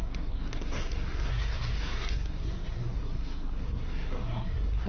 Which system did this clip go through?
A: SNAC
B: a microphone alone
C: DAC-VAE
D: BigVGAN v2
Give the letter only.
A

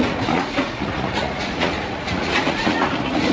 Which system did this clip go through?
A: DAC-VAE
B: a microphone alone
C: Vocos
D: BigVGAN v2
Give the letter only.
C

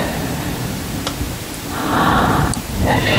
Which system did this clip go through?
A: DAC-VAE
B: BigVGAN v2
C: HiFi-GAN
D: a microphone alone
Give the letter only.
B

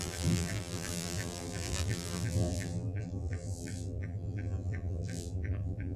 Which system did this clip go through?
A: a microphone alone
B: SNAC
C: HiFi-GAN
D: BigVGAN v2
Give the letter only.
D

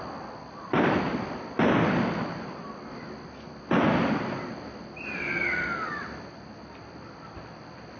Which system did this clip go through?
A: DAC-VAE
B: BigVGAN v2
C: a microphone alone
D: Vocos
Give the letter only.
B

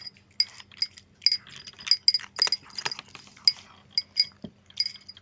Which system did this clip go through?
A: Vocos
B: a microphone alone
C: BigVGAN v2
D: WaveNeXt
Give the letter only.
B